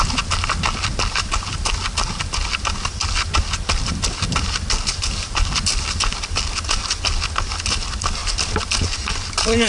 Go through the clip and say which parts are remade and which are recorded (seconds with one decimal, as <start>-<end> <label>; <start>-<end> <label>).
0.0-9.7 recorded

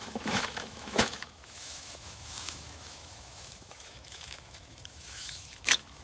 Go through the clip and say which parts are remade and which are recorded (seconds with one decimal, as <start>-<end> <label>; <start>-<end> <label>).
0.0-6.0 remade

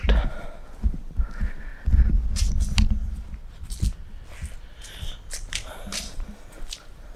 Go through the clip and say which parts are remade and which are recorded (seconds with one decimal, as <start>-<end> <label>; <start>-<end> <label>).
0.0-1.7 remade; 1.7-5.5 recorded; 5.5-7.2 remade

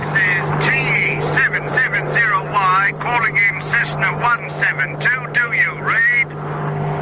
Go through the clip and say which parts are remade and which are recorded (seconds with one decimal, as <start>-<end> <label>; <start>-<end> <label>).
0.0-7.0 recorded

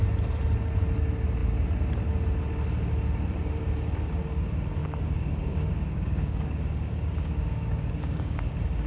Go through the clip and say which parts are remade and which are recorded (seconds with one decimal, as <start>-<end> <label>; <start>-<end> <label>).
0.0-4.8 recorded; 4.8-8.5 remade; 8.5-8.9 recorded